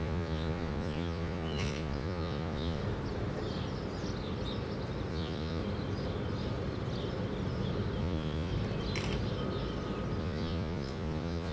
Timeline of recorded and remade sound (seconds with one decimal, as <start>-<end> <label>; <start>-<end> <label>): 0.0-2.8 remade; 2.8-5.1 recorded; 5.1-5.6 remade; 5.6-8.0 recorded; 8.0-8.5 remade; 8.5-10.2 recorded; 10.2-11.5 remade